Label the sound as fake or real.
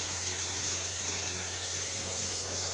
fake